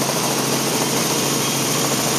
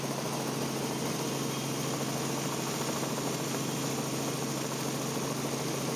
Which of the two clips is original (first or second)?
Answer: second